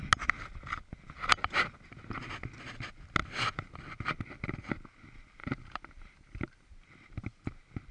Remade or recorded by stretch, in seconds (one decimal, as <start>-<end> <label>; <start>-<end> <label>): 0.0-3.2 recorded; 3.2-4.7 remade; 4.7-5.4 recorded; 5.4-6.7 remade; 6.7-7.9 recorded